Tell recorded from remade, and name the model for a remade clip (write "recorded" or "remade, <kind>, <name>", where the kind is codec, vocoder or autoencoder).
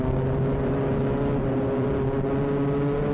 recorded